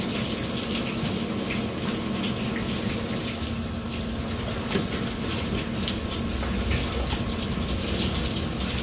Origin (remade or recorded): recorded